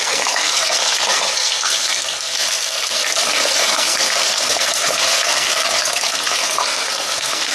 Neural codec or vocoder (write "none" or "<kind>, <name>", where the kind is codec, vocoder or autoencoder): codec, SNAC